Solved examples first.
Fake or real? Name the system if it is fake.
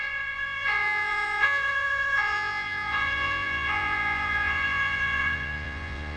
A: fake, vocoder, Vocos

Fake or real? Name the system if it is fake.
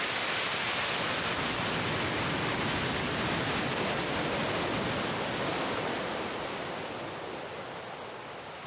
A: real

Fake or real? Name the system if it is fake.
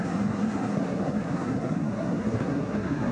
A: fake, codec, SNAC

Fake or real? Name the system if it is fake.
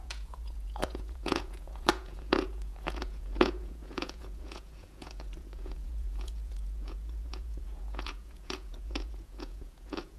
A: fake, vocoder, Vocos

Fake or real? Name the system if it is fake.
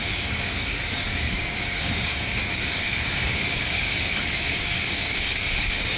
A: fake, codec, DAC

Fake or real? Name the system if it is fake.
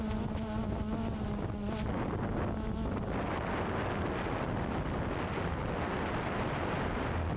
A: real